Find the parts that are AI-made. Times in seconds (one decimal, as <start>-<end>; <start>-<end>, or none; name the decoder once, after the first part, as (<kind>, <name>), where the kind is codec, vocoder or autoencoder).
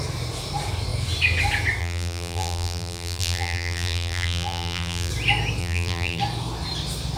1.8-5.1 (vocoder, BigVGAN v2); 5.6-6.2